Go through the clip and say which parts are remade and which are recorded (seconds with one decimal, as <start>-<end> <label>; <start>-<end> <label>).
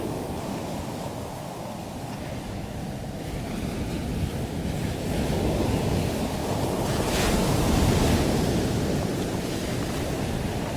0.0-2.8 remade; 2.8-5.3 recorded; 5.3-6.4 remade; 6.4-7.5 recorded; 7.5-8.1 remade; 8.1-10.8 recorded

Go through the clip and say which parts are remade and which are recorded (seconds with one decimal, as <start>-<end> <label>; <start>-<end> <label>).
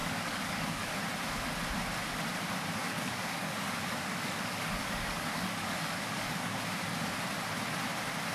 0.0-1.0 remade; 1.0-2.8 recorded; 2.8-6.6 remade; 6.6-8.3 recorded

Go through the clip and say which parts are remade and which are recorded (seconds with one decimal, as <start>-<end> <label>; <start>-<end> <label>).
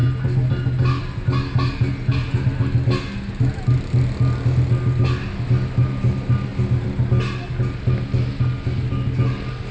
0.0-9.7 recorded